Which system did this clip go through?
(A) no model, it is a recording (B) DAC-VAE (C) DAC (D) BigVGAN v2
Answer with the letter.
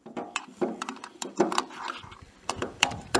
D